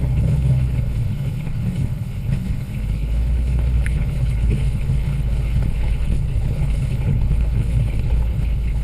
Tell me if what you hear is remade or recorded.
remade